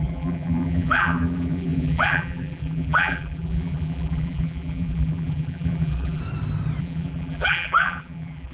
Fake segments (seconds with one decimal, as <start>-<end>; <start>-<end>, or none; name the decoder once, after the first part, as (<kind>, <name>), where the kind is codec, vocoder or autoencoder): 0.0-6.2 (vocoder, BigVGAN v2); 6.8-8.5